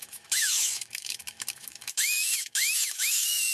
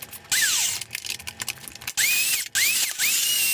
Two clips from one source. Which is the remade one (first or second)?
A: first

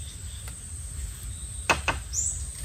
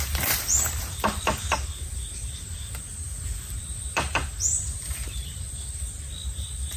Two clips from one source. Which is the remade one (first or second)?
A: second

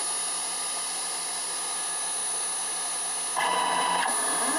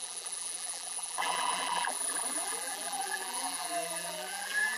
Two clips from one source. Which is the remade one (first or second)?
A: second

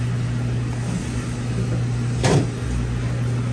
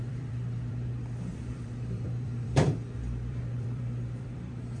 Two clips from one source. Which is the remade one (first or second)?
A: second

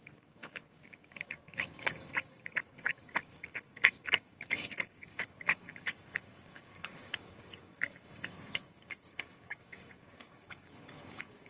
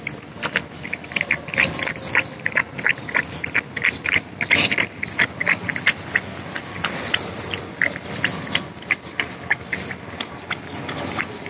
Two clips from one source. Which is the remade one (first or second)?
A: first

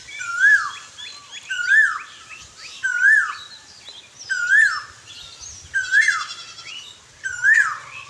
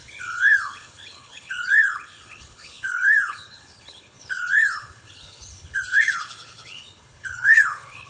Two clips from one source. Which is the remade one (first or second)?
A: second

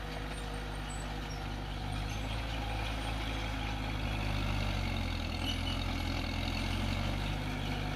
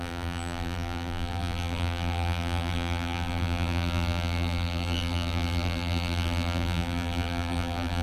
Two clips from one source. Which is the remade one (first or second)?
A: second